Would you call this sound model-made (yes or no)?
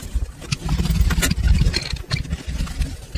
no